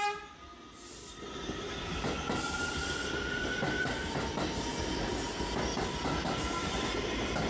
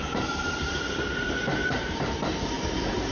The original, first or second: first